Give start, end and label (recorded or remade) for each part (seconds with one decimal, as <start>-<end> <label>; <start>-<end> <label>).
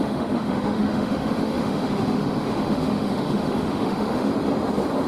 0.0-4.3 remade; 4.3-5.1 recorded